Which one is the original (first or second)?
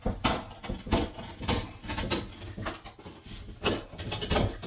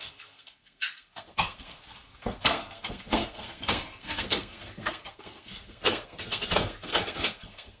first